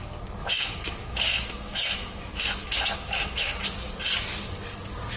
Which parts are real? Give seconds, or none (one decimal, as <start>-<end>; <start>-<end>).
0.0-0.4; 3.5-5.2